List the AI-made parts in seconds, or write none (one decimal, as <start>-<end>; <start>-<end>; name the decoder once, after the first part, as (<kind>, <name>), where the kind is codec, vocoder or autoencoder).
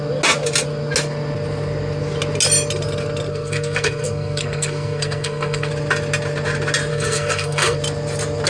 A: 3.3-5.7 (codec, SNAC); 6.9-7.8